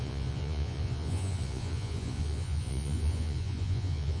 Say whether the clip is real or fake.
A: fake